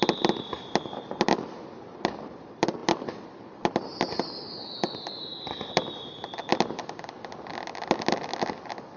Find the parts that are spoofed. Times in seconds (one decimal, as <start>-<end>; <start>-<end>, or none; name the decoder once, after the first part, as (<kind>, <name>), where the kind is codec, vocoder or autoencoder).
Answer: none